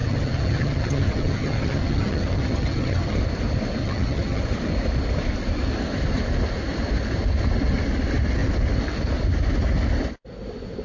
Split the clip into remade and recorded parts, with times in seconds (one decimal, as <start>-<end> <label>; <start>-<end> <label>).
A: 0.0-3.2 remade; 3.2-3.8 recorded; 3.8-4.4 remade; 4.4-10.8 recorded